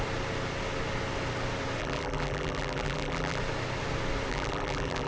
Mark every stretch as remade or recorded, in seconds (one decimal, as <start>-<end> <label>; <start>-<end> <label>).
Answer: 0.0-1.8 recorded; 1.8-3.4 remade; 3.4-4.3 recorded; 4.3-5.1 remade